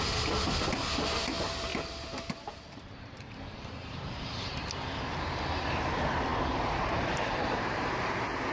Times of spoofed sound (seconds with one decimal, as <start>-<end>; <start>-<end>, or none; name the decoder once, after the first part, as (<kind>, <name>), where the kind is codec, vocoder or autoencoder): 1.7-4.6 (vocoder, BigVGAN v2); 6.3-7.9